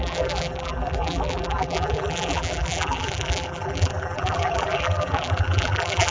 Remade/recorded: remade